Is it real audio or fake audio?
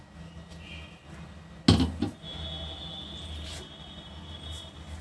real